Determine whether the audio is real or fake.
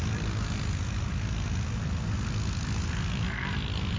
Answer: real